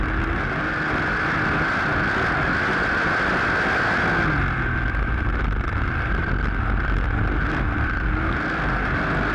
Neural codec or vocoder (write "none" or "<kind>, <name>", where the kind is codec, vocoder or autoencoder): none